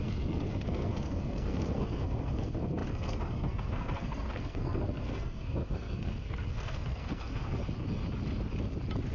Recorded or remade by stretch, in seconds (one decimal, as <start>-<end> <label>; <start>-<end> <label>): 0.0-7.6 remade; 7.6-9.1 recorded